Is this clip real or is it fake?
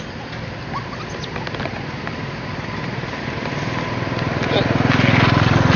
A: real